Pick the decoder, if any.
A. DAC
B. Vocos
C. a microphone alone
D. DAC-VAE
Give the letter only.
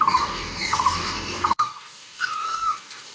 A